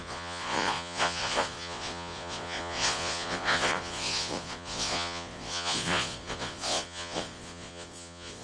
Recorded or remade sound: remade